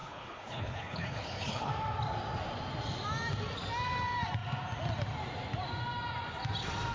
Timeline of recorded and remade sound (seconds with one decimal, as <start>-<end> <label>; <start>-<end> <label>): 0.0-1.7 remade; 1.7-6.9 recorded